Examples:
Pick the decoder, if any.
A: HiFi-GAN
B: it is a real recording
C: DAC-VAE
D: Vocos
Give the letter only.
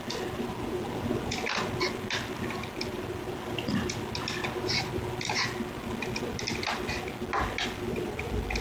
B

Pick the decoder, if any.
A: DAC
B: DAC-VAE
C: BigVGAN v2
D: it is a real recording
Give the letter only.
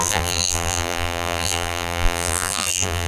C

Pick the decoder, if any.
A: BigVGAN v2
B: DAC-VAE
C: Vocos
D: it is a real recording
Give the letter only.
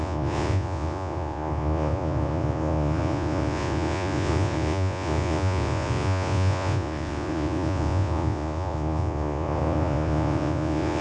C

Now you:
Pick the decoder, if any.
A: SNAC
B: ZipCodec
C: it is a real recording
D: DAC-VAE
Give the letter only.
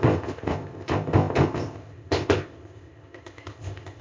B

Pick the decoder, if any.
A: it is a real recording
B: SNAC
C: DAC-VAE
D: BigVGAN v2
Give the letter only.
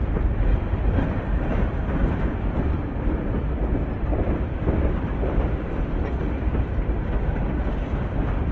D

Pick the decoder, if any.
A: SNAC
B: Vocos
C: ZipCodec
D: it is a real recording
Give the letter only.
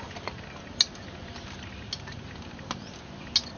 D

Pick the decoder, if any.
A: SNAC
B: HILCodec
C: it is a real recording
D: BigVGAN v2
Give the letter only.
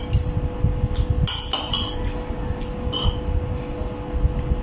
C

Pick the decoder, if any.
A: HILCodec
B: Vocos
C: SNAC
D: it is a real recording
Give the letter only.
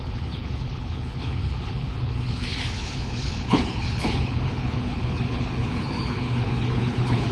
A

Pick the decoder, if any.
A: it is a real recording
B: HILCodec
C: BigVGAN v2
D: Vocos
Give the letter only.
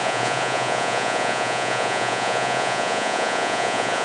D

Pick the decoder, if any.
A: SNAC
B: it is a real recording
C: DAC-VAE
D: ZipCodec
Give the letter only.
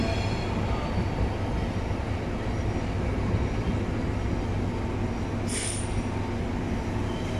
B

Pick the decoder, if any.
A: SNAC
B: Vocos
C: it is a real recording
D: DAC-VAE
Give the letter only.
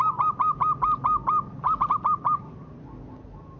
C